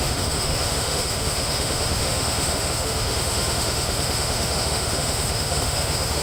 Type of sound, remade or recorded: remade